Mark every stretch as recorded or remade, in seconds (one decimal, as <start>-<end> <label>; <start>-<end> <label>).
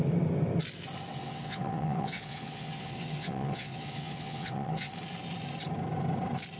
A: 0.0-1.1 recorded; 1.1-4.9 remade; 4.9-6.6 recorded